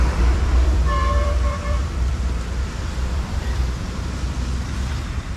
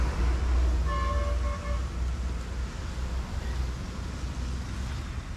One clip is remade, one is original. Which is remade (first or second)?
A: first